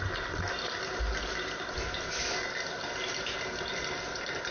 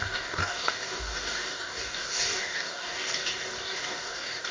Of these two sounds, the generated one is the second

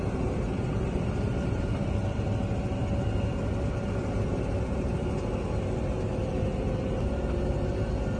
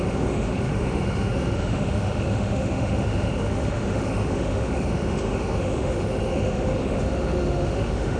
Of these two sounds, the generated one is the second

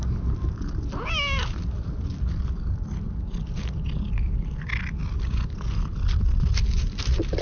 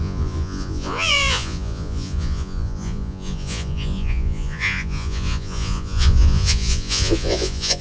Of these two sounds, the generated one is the second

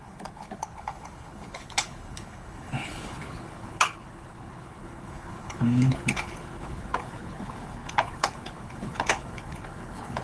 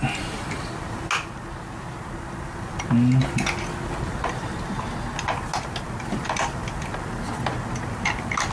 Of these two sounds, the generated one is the first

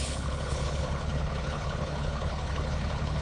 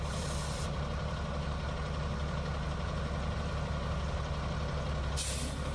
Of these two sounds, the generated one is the first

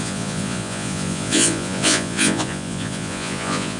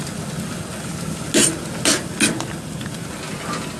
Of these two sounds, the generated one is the first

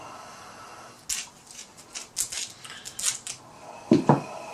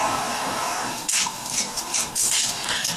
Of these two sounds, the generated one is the second